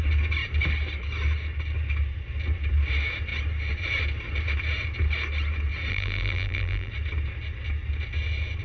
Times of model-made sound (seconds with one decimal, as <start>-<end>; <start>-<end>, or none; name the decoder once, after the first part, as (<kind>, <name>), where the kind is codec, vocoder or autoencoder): 5.9-6.9 (vocoder, BigVGAN v2)